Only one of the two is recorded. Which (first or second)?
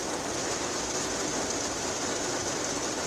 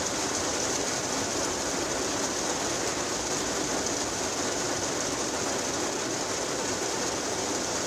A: first